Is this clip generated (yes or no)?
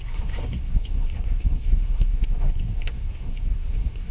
yes